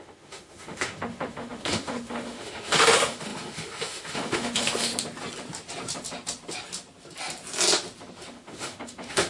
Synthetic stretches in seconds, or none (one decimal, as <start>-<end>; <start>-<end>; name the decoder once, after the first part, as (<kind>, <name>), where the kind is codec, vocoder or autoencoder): 0.0-4.9 (autoencoder, DAC-VAE); 8.3-9.3